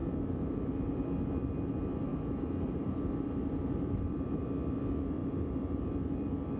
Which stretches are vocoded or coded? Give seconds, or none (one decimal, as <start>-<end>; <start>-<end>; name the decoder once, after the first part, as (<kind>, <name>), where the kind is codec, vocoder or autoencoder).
2.1-4.4 (vocoder, BigVGAN v2); 5.2-5.9